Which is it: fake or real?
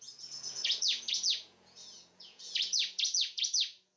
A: fake